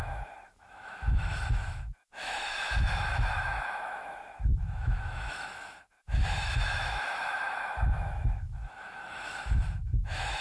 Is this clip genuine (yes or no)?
no